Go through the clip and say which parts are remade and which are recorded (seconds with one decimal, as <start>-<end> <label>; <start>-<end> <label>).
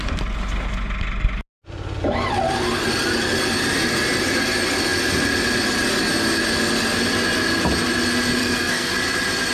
0.0-8.4 recorded; 8.4-8.9 remade; 8.9-9.5 recorded